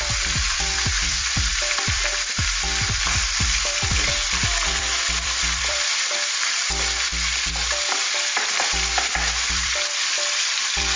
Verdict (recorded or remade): remade